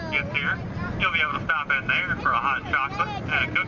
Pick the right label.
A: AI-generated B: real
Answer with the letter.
B